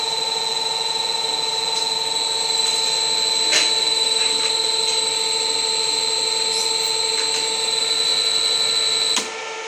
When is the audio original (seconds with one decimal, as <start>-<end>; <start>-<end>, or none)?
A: 0.0-9.7